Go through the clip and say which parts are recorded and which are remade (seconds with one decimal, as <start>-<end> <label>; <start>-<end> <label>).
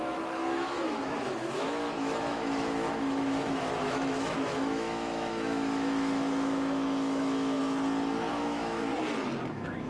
0.0-7.6 remade; 7.6-8.3 recorded; 8.3-8.9 remade; 8.9-9.5 recorded; 9.5-9.9 remade